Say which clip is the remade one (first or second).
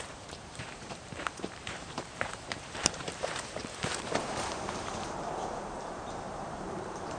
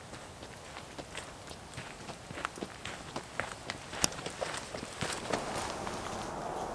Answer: first